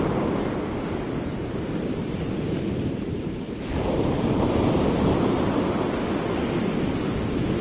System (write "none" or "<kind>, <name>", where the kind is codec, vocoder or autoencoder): none